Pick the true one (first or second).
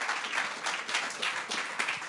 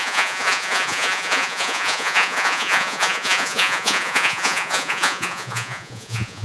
first